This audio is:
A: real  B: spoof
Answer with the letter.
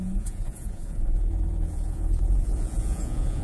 B